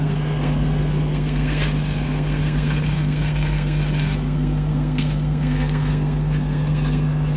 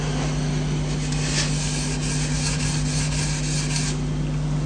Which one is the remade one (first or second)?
first